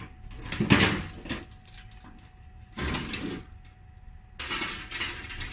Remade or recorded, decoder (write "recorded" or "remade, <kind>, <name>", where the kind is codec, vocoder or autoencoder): recorded